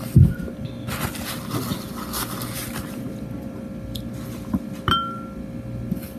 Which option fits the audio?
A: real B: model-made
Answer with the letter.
A